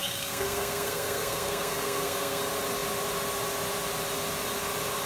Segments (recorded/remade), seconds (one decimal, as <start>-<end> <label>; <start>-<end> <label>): 0.0-2.4 remade; 2.4-5.1 recorded